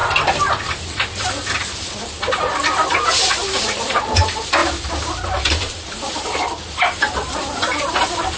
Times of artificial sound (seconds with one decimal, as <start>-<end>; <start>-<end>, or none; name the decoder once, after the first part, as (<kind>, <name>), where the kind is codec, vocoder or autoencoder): none